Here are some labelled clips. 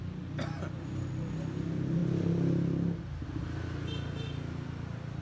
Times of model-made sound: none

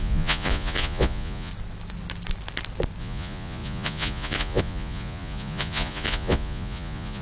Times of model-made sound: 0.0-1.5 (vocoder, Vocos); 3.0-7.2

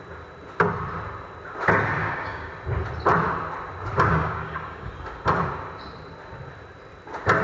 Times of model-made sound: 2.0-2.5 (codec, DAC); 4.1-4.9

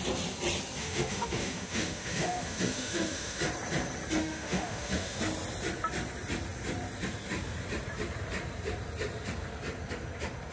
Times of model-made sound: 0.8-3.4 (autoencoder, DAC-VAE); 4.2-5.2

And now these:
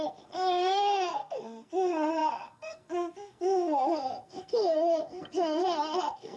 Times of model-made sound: 0.0-6.4 (codec, SNAC)

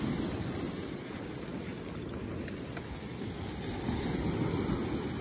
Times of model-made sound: none